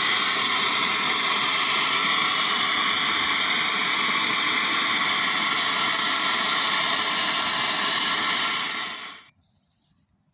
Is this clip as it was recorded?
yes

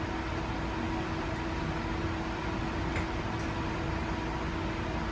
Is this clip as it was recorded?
yes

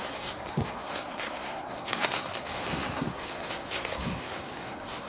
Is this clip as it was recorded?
no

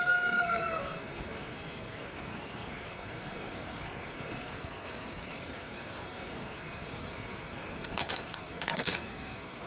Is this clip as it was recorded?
no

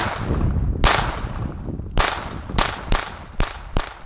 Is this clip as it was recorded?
yes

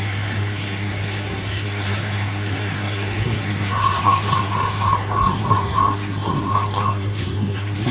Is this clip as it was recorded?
no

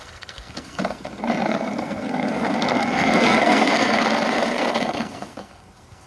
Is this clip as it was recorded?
no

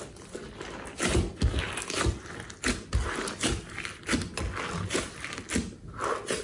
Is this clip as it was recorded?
yes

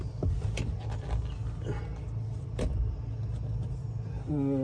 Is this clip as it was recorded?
yes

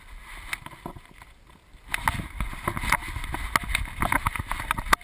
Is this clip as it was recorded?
yes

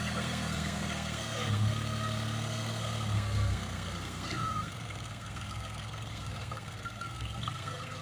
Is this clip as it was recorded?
no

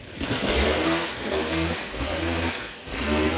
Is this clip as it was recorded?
no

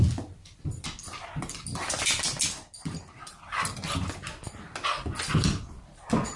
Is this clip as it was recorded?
yes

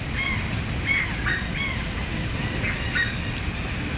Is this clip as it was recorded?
yes